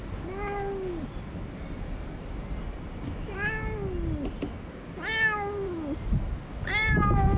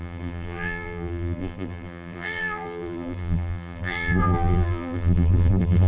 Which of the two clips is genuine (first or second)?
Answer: first